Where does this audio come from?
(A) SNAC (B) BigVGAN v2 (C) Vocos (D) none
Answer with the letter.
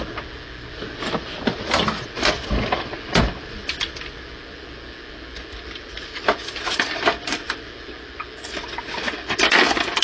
D